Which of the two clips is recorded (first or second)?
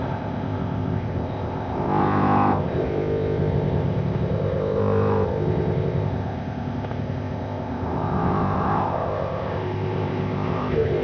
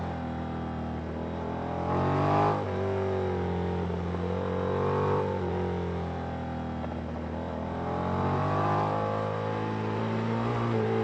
second